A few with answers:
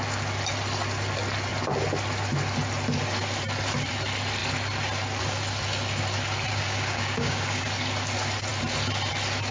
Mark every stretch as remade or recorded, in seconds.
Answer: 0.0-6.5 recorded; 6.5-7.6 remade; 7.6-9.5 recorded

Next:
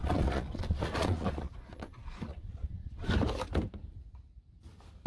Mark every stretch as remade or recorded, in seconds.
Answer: 0.0-3.1 remade; 3.1-5.1 recorded

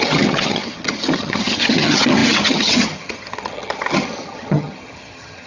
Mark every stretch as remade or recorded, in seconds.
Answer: 0.0-5.5 remade

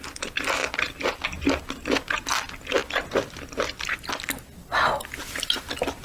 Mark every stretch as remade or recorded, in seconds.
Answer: 0.0-6.0 recorded